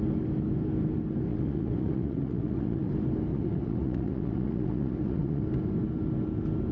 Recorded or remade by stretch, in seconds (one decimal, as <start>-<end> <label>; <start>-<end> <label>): 0.0-1.3 recorded; 1.3-2.9 remade; 2.9-3.3 recorded; 3.3-5.4 remade; 5.4-6.7 recorded